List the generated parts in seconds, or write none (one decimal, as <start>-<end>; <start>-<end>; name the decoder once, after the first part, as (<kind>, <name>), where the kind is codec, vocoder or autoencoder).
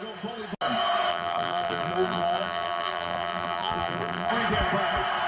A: 1.1-4.3 (vocoder, BigVGAN v2)